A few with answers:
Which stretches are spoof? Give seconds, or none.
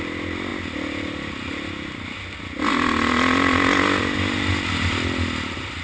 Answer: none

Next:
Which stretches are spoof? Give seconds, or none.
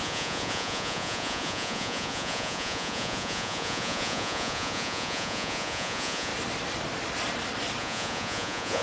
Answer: 0.0-6.3 (vocoder, Vocos); 7.8-8.8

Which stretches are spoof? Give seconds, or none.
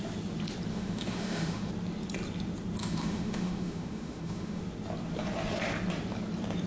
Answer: 0.7-1.7 (autoencoder, DAC-VAE); 2.8-4.6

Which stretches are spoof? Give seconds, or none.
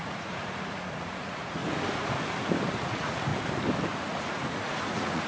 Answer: 0.0-1.6 (vocoder, Vocos); 2.7-3.3; 4.0-5.3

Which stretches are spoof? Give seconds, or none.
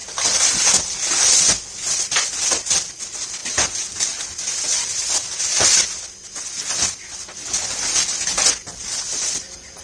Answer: none